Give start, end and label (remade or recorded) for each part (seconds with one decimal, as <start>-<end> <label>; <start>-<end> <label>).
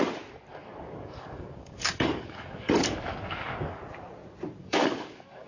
0.0-0.5 recorded; 0.5-3.8 remade; 3.8-4.6 recorded; 4.6-5.5 remade